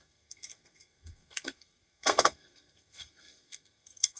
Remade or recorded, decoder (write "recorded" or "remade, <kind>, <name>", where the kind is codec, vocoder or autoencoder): remade, codec, SNAC